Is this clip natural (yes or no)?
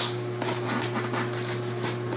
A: yes